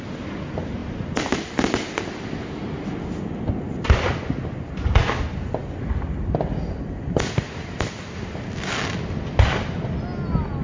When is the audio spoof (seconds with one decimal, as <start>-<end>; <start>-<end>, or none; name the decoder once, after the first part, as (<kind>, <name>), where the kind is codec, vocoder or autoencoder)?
none